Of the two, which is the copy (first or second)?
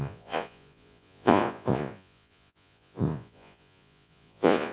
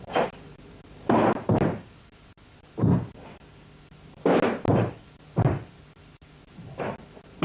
first